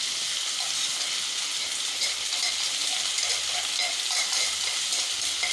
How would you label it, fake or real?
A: real